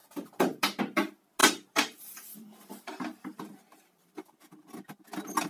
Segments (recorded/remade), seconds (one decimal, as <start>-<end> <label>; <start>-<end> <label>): 0.0-1.4 recorded; 1.4-4.5 remade; 4.5-5.5 recorded